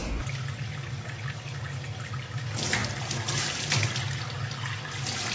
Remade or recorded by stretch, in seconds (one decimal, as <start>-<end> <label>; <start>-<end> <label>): 0.0-5.3 recorded